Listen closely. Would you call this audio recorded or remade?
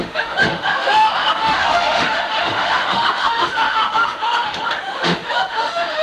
remade